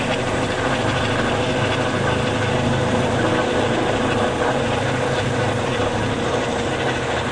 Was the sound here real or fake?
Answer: real